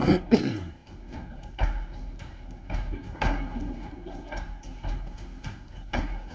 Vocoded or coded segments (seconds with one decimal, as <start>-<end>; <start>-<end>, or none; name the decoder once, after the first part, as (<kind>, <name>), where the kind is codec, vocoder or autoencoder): 0.0-6.3 (codec, SNAC)